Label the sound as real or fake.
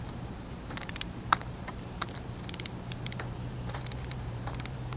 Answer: fake